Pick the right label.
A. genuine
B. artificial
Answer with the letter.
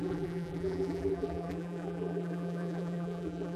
B